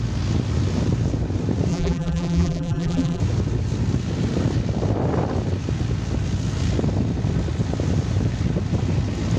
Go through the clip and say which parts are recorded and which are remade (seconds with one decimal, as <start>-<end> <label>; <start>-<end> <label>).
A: 0.0-1.7 recorded; 1.7-3.2 remade; 3.2-9.4 recorded